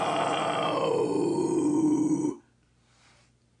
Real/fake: real